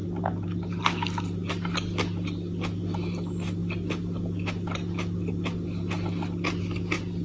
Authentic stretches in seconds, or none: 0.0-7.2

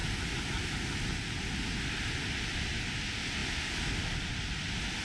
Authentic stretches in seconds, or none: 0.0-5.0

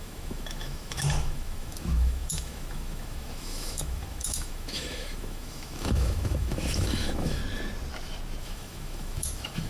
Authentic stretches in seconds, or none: 7.4-8.4